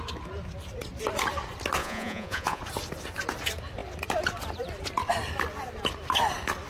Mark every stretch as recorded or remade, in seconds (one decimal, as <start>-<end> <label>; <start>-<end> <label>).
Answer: 0.0-1.8 recorded; 1.8-2.6 remade; 2.6-6.7 recorded